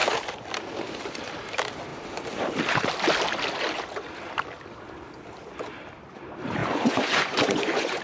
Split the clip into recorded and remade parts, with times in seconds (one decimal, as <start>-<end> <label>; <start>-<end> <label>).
0.0-6.6 recorded; 6.6-8.0 remade